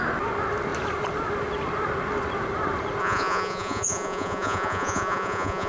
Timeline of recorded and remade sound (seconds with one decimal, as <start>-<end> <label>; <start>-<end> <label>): 0.0-3.0 recorded; 3.0-5.7 remade